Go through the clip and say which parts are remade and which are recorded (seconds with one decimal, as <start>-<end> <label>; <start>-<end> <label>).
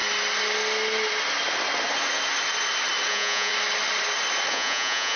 0.0-3.1 recorded; 3.1-3.5 remade; 3.5-4.5 recorded; 4.5-5.2 remade